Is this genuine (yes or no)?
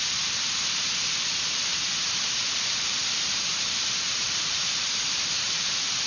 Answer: no